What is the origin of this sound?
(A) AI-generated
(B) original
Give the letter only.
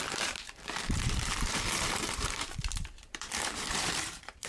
A